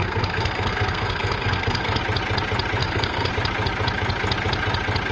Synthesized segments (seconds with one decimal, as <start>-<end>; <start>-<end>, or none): 0.0-2.0; 2.8-3.3